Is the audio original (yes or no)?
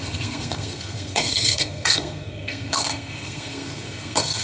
no